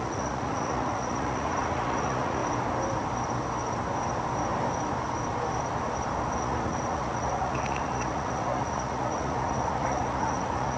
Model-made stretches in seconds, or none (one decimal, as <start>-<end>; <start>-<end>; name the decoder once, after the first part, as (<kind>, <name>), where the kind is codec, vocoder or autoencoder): 0.0-2.4 (vocoder, Vocos); 6.4-10.8